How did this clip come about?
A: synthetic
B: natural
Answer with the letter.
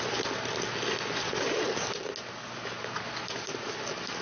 B